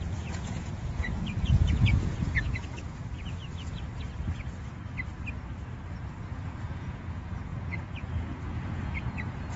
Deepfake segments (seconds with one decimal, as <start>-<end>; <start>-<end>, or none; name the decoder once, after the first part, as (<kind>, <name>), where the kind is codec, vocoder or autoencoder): 0.0-3.4 (vocoder, Vocos); 6.2-9.6